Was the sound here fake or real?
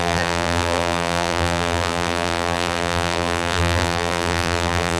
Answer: fake